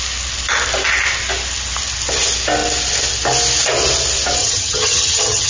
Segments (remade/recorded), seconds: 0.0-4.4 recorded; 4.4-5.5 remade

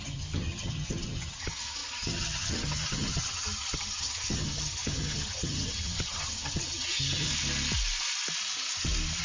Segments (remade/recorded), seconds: 0.0-7.3 remade; 7.3-9.2 recorded